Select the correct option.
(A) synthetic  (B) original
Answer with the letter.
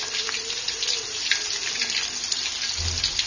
B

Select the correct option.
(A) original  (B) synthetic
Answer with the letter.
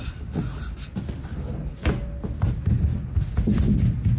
A